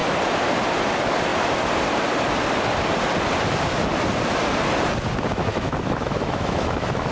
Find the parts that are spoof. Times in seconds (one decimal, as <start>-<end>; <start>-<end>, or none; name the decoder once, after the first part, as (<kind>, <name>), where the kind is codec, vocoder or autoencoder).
5.5-7.1 (autoencoder, DAC-VAE)